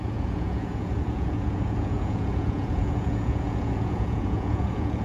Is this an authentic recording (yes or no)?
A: no